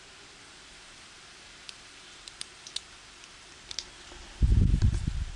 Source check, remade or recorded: recorded